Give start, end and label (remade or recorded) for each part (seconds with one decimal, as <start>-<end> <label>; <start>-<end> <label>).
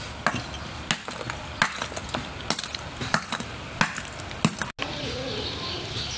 0.0-6.2 recorded